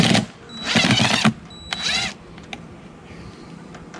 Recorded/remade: recorded